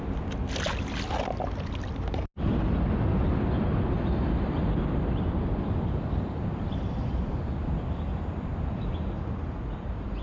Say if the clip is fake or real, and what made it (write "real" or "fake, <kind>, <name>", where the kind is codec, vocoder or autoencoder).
real